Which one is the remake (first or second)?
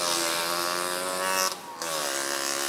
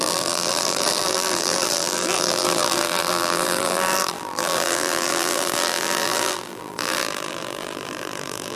second